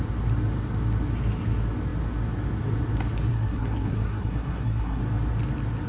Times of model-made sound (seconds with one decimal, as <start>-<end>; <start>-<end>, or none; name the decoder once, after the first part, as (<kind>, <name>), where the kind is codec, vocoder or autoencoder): 3.3-5.0 (codec, SNAC)